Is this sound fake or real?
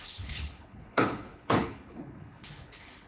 fake